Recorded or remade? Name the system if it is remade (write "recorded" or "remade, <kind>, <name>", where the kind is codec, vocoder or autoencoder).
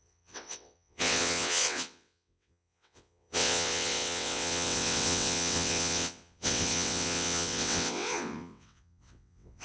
remade, vocoder, WaveNeXt